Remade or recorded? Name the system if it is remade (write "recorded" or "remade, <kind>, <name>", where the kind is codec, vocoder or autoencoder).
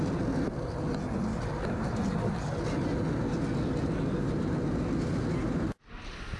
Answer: recorded